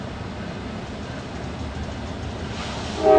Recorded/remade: recorded